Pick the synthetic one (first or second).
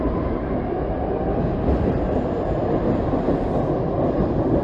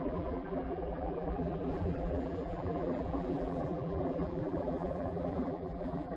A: second